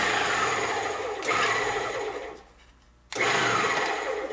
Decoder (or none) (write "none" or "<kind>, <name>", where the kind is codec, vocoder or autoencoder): none